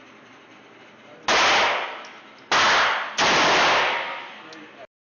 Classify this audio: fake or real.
real